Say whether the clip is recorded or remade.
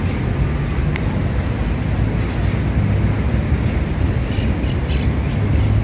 recorded